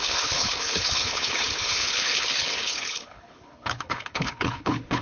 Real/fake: fake